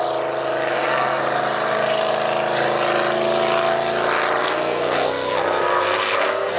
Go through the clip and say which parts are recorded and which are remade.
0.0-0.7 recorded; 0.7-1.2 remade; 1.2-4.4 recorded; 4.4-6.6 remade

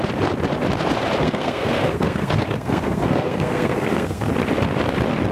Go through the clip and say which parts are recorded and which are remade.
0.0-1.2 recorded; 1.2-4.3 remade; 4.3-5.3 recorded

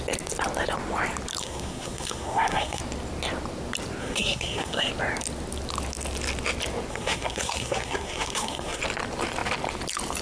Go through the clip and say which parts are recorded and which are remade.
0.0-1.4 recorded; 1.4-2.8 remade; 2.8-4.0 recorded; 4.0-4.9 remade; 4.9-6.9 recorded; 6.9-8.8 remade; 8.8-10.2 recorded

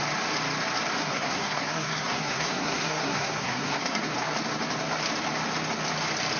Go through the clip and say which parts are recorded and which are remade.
0.0-1.0 recorded; 1.0-4.0 remade; 4.0-6.4 recorded

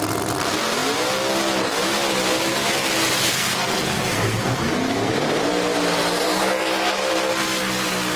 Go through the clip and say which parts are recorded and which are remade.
0.0-3.3 recorded; 3.3-5.1 remade; 5.1-8.2 recorded

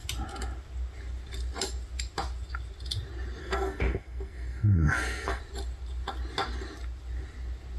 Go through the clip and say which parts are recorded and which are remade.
0.0-3.4 recorded; 3.4-5.4 remade; 5.4-7.8 recorded

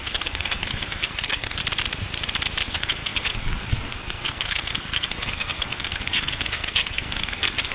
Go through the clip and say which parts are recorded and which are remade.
0.0-1.6 remade; 1.6-2.7 recorded; 2.7-7.7 remade

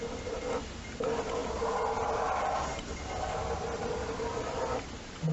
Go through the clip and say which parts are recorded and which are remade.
0.0-5.3 recorded